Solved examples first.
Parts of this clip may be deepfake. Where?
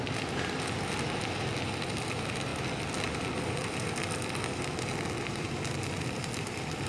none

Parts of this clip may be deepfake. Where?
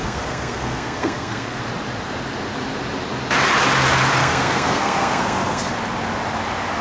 0.0-1.6 (codec, SNAC); 4.2-5.7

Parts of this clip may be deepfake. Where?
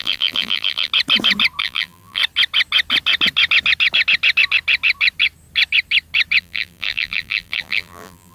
0.0-0.9 (vocoder, BigVGAN v2); 1.6-2.2; 6.4-8.3